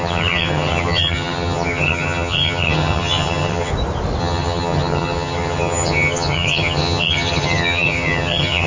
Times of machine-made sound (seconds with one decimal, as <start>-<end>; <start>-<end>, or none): 0.0-3.7; 4.2-8.7